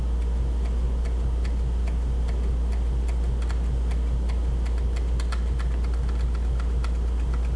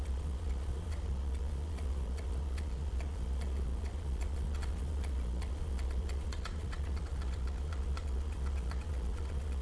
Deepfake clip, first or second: second